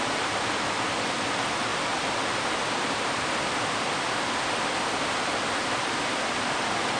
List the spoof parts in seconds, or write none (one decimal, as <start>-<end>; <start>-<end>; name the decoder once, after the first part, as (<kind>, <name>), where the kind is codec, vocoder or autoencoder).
none